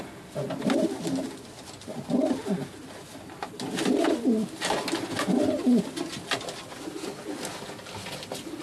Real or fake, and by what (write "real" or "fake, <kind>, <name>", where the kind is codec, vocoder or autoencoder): real